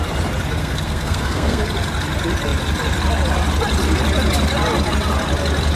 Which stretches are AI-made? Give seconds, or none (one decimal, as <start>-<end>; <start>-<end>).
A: 0.6-1.6